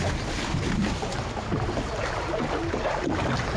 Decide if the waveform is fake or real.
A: real